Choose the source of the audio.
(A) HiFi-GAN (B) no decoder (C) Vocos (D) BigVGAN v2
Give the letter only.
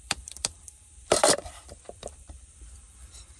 D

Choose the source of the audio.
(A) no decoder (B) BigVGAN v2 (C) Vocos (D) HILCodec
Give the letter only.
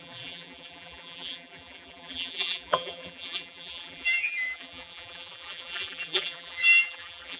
B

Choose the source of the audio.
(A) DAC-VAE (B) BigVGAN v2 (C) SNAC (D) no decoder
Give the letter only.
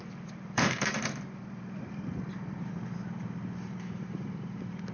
B